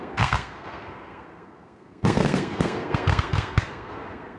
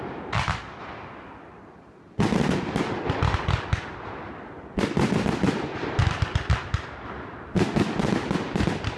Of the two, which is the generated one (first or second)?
first